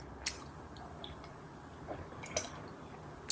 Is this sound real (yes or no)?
yes